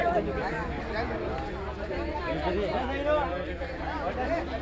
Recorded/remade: recorded